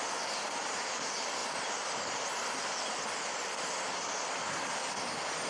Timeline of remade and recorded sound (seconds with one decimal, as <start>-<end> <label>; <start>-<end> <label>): 0.0-5.5 recorded